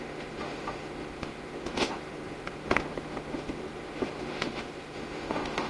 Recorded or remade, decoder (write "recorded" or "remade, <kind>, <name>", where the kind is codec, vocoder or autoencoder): remade, autoencoder, DAC-VAE